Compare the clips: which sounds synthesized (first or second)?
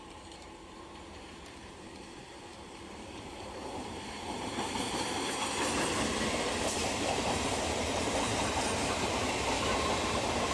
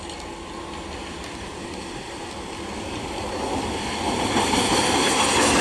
first